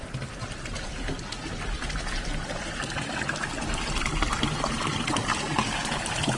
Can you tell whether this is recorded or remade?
recorded